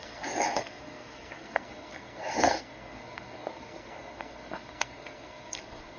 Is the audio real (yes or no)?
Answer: no